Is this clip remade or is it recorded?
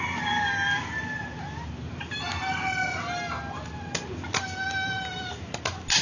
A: recorded